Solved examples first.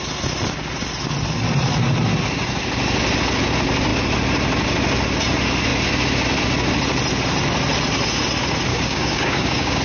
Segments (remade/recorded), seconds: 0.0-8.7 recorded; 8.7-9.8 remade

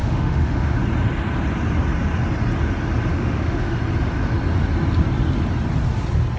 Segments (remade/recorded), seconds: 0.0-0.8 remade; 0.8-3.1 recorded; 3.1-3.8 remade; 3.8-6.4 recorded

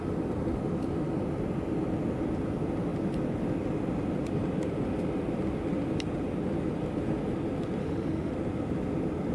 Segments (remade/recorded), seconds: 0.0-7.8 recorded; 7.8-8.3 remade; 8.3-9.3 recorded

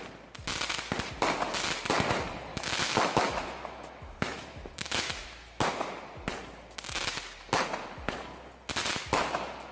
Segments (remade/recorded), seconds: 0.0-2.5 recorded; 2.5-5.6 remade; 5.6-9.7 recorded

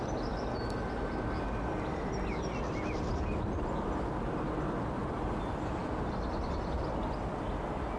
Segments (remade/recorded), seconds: 0.0-8.0 recorded

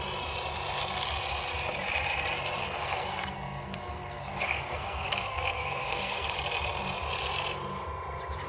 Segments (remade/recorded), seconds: 0.0-2.6 recorded; 2.6-6.3 remade; 6.3-8.5 recorded